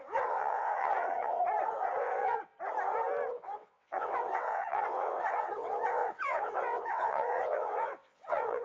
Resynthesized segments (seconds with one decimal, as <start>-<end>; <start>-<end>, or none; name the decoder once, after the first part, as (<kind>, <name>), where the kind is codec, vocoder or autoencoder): 0.0-1.4 (vocoder, WaveNeXt); 2.0-2.5; 3.3-8.6